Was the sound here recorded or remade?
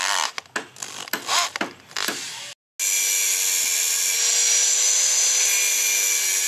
recorded